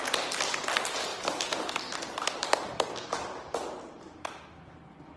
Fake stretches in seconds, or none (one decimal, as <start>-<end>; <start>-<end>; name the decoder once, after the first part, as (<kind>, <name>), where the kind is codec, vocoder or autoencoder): none